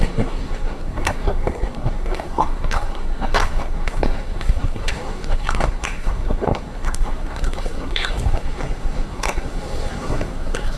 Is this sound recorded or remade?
remade